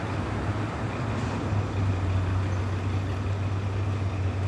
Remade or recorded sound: recorded